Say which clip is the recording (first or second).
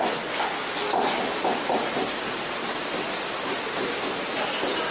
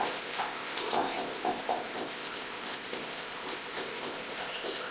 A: first